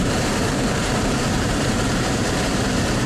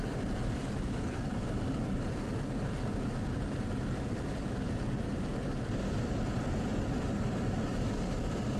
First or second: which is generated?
first